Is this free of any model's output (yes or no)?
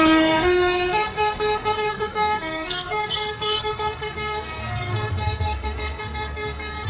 no